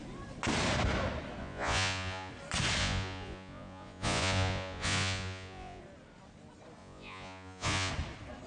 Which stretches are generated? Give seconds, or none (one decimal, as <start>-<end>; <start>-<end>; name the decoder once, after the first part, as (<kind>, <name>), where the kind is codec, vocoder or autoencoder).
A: 1.4-2.3 (vocoder, Vocos); 2.8-5.8; 6.8-7.9